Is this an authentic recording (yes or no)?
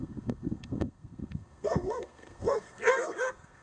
no